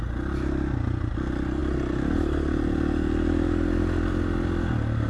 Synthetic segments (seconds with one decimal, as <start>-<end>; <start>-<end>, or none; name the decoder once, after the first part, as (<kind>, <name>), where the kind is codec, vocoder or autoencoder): none